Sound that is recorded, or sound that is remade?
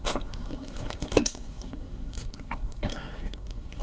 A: remade